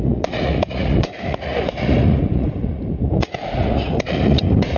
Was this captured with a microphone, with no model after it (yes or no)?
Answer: no